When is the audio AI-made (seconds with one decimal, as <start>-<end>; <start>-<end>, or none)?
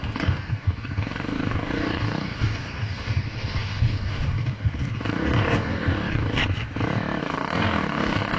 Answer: 0.0-6.4; 7.2-8.4